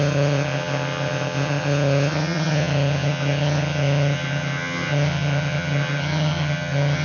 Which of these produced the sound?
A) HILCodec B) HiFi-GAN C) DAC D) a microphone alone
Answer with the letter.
B